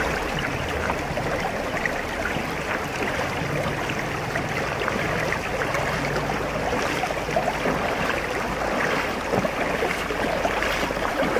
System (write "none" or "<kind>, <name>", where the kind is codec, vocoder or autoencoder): none